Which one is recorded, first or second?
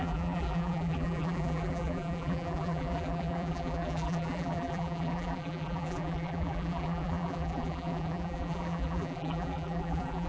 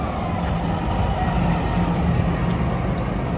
second